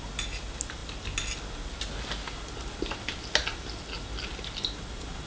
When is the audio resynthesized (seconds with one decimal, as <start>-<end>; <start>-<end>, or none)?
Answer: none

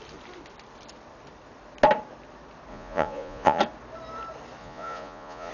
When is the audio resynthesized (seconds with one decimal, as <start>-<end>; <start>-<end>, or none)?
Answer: 2.7-3.6; 4.6-5.5

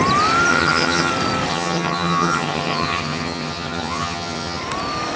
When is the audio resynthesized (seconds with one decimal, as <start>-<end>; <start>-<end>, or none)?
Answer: 0.5-1.1; 1.5-4.6

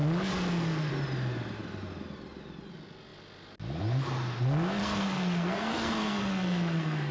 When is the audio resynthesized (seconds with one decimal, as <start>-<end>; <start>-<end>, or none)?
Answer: 4.8-7.1

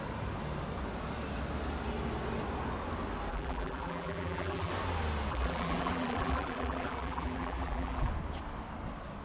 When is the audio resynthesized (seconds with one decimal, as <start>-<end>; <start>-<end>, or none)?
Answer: 3.3-4.7; 5.3-8.1

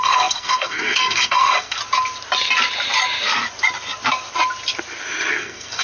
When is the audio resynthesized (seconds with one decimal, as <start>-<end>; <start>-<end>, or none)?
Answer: 0.0-1.8; 5.3-5.8